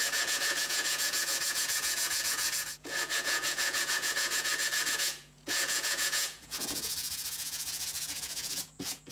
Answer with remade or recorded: remade